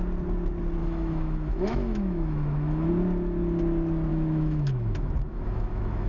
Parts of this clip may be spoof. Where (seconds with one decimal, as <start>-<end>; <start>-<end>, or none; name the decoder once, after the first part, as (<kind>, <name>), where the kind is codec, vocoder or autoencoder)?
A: 0.8-2.9 (autoencoder, DAC-VAE); 4.1-6.1